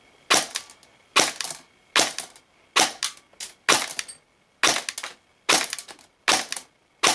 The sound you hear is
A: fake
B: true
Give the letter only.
B